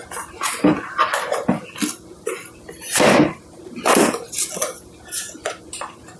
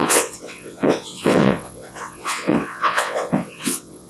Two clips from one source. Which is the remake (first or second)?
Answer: second